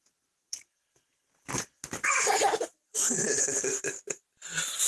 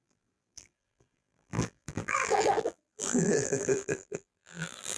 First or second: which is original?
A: first